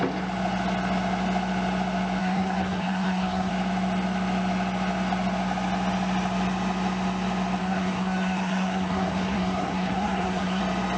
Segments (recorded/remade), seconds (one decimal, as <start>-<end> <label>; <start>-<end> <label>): 0.0-2.2 recorded; 2.2-3.5 remade; 3.5-7.6 recorded; 7.6-10.6 remade; 10.6-11.0 recorded